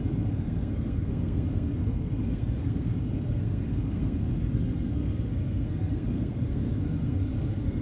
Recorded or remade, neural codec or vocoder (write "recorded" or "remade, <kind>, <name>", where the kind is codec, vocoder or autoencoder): remade, codec, SNAC